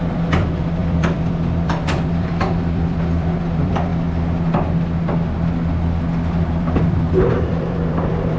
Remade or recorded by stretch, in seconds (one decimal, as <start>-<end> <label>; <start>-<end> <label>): 0.0-3.9 remade; 3.9-6.3 recorded; 6.3-8.4 remade